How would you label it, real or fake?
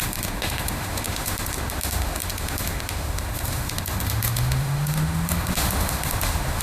fake